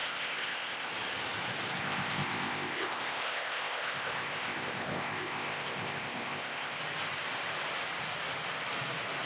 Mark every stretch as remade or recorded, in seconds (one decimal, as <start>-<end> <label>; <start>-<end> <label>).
0.0-0.9 remade; 0.9-1.8 recorded; 1.8-6.8 remade; 6.8-9.3 recorded